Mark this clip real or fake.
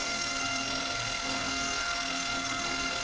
fake